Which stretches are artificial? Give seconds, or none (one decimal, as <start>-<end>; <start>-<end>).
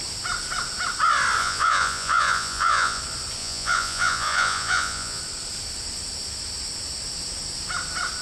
1.4-3.0; 3.4-5.2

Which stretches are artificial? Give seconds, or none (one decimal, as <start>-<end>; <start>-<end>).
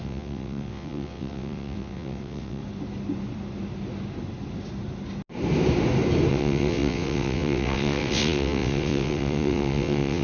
0.0-2.6; 6.3-10.2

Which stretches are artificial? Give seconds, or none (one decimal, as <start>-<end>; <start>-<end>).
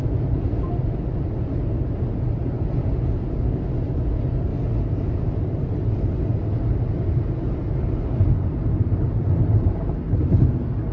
none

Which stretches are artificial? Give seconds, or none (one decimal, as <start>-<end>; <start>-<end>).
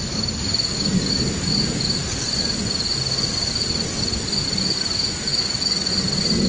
5.3-5.9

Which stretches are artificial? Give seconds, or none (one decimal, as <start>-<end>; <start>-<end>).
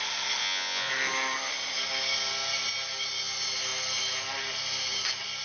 0.4-0.9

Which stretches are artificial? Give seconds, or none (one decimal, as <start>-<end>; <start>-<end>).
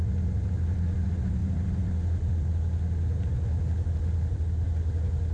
none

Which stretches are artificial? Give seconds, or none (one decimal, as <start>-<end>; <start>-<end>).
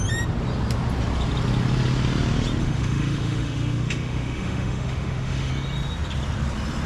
2.6-5.5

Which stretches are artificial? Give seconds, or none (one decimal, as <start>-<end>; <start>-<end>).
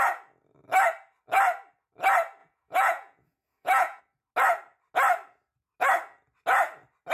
2.4-4.0